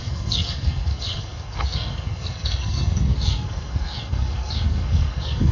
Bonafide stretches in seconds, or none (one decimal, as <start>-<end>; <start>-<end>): none